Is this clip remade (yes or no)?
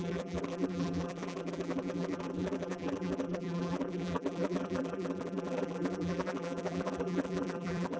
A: yes